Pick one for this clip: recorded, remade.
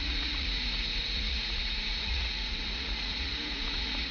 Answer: remade